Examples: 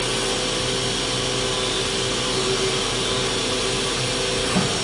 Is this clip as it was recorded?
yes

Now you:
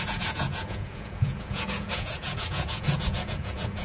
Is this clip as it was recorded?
no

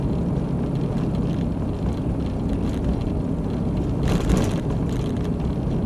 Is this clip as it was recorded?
yes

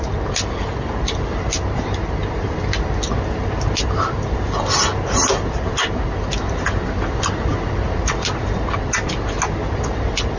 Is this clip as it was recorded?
yes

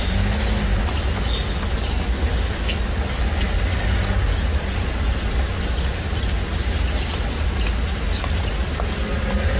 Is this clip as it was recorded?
yes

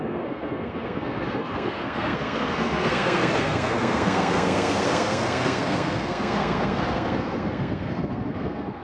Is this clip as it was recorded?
no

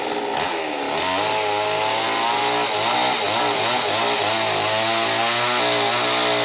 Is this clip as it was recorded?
yes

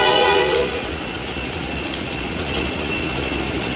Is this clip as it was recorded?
no